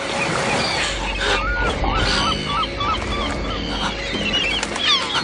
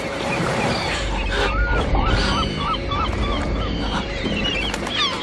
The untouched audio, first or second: first